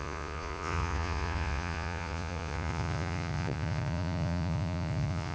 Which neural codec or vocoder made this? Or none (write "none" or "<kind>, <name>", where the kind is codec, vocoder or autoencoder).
vocoder, Vocos